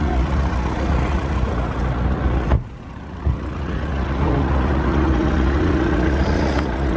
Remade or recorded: remade